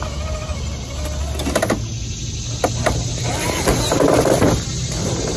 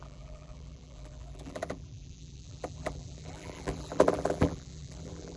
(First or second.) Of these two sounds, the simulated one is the second